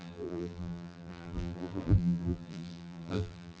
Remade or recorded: remade